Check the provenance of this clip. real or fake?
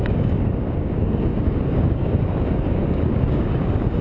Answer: fake